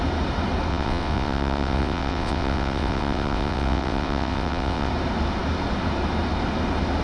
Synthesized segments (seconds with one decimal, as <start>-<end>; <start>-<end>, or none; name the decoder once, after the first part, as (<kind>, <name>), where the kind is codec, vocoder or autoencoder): 0.7-4.9 (vocoder, WaveNeXt)